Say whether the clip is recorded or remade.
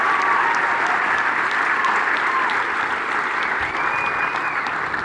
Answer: recorded